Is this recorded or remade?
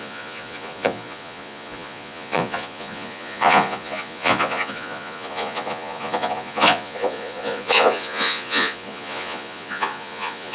remade